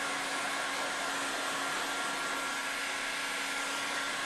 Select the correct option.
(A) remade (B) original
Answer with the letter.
B